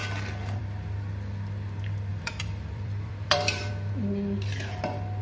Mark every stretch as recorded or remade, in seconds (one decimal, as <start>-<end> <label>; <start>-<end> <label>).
0.0-2.1 recorded; 2.1-3.7 remade; 3.7-5.2 recorded